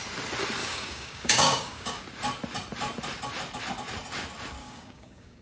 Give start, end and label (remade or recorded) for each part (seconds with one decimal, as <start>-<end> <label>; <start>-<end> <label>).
0.0-0.6 recorded; 0.6-2.0 remade; 2.0-4.6 recorded; 4.6-5.4 remade